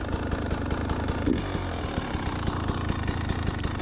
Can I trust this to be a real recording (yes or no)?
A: yes